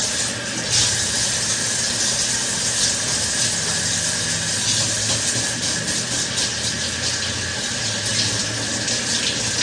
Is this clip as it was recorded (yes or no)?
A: yes